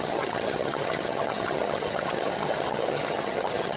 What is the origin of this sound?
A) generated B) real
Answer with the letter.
A